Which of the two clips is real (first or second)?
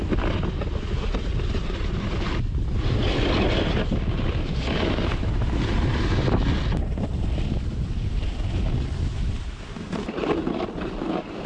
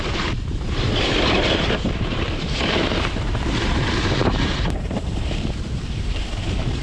first